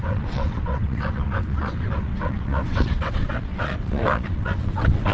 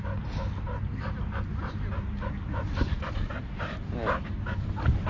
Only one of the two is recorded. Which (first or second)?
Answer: second